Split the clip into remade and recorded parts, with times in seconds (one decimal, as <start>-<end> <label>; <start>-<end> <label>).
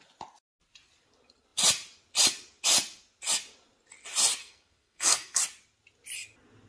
0.0-4.4 recorded; 4.4-5.4 remade; 5.4-6.7 recorded